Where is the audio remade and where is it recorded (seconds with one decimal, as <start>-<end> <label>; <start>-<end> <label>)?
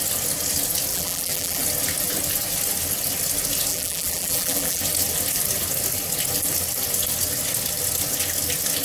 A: 0.0-0.9 recorded; 0.9-1.6 remade; 1.6-3.7 recorded; 3.7-4.8 remade; 4.8-8.8 recorded